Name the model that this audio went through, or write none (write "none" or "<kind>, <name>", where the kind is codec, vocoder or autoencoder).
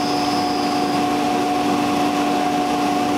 none